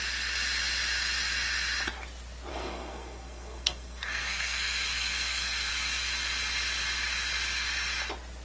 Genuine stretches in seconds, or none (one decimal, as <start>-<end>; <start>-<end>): 0.0-2.5; 5.7-8.4